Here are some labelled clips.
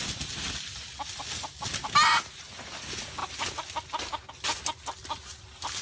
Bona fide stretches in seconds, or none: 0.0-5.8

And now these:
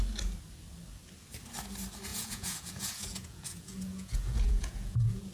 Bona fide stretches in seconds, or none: 0.0-2.1

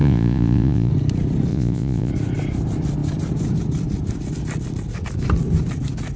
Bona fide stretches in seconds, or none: 0.9-1.5; 2.1-6.2

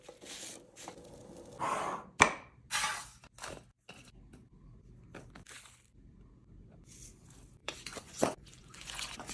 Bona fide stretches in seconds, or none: 0.0-7.6

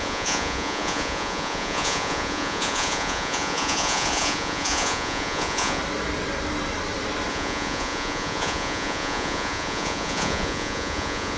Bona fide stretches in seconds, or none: 5.8-7.3